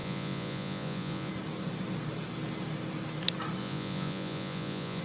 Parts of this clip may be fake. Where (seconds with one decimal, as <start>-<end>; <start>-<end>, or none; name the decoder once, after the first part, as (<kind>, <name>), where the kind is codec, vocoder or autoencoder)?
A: 0.0-1.3 (vocoder, Vocos); 3.6-5.0